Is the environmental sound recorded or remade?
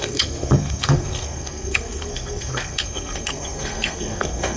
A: remade